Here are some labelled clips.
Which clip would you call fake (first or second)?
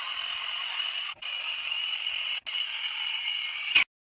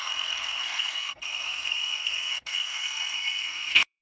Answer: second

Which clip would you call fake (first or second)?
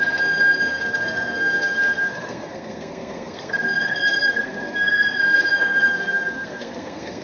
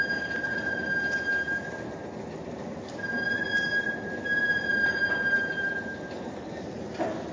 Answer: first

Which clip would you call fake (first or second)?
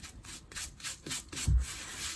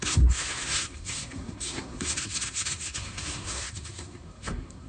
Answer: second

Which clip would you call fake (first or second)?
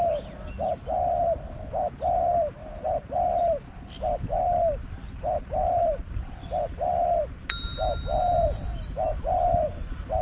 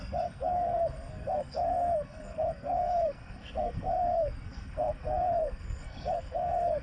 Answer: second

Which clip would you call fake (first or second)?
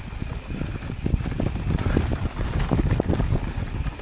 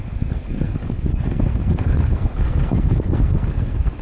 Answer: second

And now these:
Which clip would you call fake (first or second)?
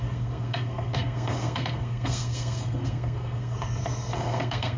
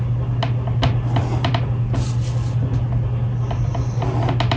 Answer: first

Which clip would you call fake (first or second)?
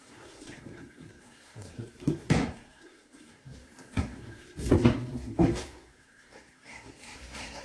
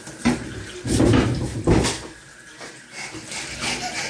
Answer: first